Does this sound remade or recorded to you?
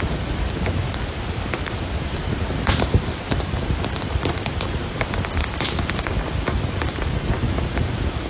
remade